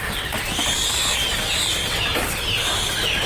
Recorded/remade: recorded